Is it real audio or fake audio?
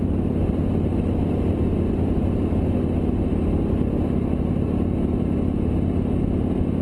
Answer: real